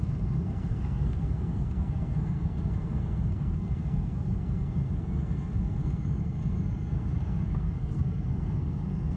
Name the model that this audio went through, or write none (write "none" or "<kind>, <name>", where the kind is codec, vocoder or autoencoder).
codec, SNAC